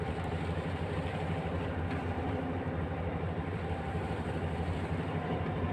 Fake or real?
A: fake